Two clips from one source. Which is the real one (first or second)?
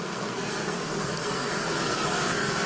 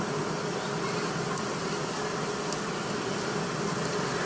second